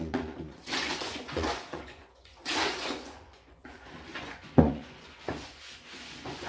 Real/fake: fake